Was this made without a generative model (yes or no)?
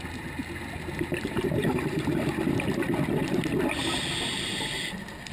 yes